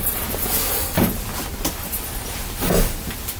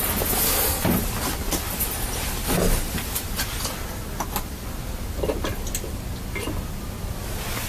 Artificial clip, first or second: first